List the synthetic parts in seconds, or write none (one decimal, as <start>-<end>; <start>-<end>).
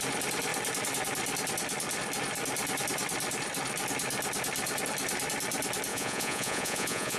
5.9-7.2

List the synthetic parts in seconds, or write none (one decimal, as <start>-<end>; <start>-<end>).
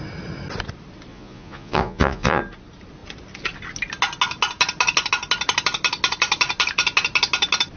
1.1-2.4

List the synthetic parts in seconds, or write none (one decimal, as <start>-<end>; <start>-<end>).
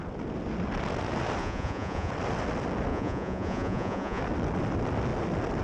1.4-2.1; 2.9-4.2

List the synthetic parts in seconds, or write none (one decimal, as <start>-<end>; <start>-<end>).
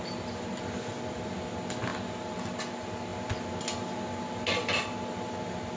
none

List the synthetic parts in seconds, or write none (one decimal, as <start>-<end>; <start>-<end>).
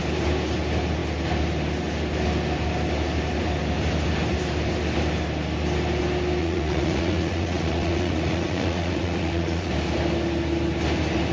6.4-9.7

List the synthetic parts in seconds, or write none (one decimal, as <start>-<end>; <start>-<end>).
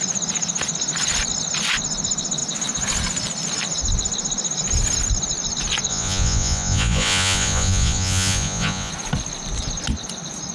5.9-8.9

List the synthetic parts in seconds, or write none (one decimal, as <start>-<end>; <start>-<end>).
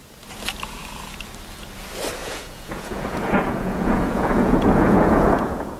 2.2-5.8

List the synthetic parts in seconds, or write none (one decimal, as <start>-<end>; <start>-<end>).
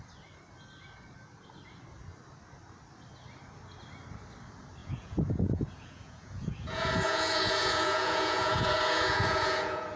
4.8-10.0